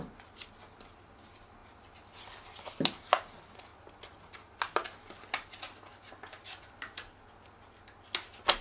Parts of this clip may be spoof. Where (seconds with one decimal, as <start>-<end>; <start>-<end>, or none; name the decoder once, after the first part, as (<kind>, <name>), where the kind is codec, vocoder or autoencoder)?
none